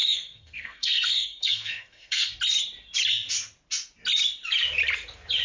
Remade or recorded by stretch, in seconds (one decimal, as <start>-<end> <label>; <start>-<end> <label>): 0.0-2.3 remade; 2.3-5.4 recorded